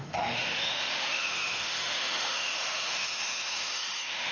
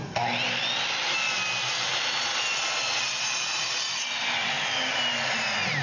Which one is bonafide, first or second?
second